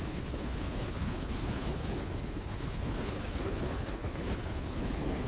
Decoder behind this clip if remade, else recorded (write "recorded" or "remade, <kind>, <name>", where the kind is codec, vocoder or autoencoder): remade, codec, HILCodec